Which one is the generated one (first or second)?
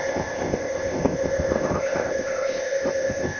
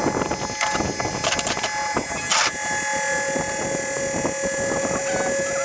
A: first